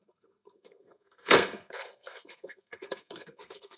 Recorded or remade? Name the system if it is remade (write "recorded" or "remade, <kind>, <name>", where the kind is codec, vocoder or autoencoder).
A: remade, codec, SNAC